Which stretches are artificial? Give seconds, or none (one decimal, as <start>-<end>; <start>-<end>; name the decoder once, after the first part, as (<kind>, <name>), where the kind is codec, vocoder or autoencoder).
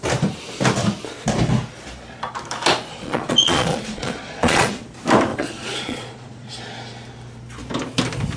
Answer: 2.9-4.7 (vocoder, Vocos); 5.3-6.5